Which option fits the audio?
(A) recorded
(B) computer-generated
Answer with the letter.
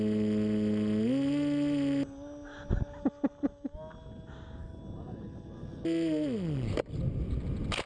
A